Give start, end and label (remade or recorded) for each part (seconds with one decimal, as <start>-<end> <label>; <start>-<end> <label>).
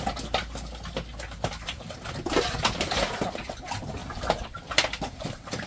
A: 0.0-5.7 recorded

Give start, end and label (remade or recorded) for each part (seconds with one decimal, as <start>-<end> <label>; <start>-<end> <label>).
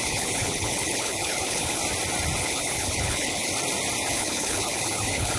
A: 0.0-1.8 remade; 1.8-2.4 recorded; 2.4-3.5 remade; 3.5-4.1 recorded; 4.1-5.4 remade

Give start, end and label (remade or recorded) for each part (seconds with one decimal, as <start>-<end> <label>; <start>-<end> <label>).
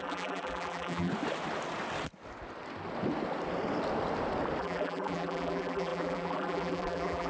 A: 0.0-1.1 remade; 1.1-4.6 recorded; 4.6-7.3 remade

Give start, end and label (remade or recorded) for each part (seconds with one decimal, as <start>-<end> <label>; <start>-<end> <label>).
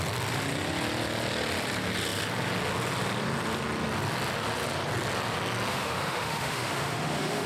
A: 0.0-5.7 recorded; 5.7-7.5 remade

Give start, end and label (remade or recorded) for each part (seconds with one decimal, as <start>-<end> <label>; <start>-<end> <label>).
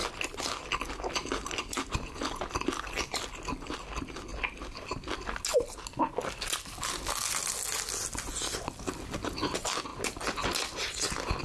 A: 0.0-11.4 recorded